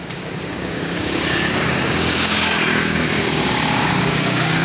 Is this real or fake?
fake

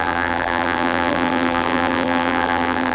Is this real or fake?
fake